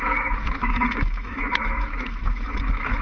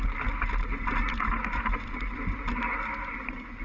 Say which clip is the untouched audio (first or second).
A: second